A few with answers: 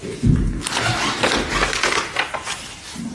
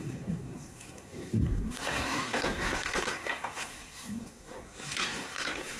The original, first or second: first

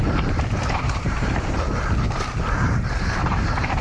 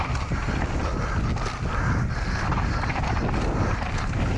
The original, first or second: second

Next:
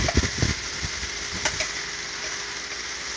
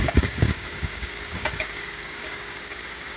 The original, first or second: first